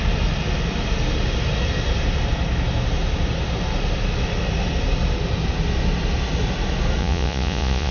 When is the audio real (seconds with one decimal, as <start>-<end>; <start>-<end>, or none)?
0.0-7.0